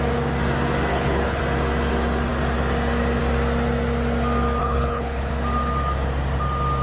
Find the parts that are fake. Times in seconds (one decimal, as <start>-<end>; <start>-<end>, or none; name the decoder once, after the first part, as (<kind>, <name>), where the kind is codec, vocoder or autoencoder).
0.9-1.4 (codec, HILCodec); 4.6-5.3